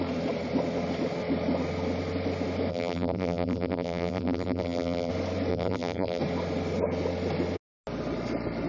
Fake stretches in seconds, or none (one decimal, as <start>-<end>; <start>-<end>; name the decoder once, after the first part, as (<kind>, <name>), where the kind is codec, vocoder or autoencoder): 2.7-5.1 (vocoder, BigVGAN v2); 5.5-6.2